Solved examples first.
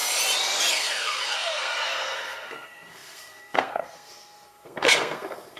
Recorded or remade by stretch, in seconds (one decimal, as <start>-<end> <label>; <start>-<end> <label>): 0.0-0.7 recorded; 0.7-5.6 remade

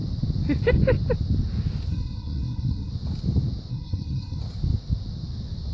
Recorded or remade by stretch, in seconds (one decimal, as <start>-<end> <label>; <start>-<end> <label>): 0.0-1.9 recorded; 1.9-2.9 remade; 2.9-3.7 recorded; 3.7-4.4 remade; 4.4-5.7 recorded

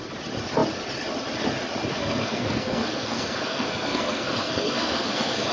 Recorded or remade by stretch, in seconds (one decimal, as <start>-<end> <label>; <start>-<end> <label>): 0.0-1.9 recorded; 1.9-5.5 remade

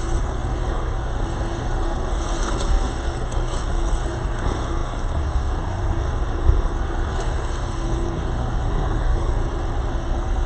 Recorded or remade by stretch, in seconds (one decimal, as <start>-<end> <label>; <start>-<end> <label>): 0.0-9.4 remade; 9.4-9.9 recorded; 9.9-10.5 remade

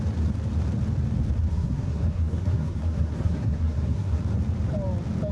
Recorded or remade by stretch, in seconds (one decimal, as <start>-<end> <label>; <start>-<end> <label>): 0.0-1.5 recorded; 1.5-4.2 remade; 4.2-5.3 recorded

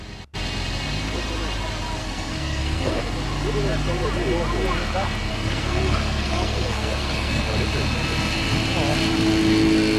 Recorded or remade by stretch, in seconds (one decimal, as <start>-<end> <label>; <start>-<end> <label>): 0.0-2.0 recorded; 2.0-3.0 remade; 3.0-5.3 recorded; 5.3-7.4 remade; 7.4-10.0 recorded

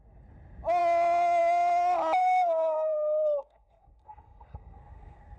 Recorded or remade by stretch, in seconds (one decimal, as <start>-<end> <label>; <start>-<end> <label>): 0.0-2.2 recorded; 2.2-5.4 remade

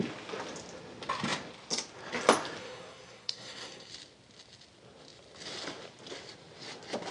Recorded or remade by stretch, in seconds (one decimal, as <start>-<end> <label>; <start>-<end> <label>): 0.0-2.6 recorded; 2.6-3.9 remade; 3.9-7.1 recorded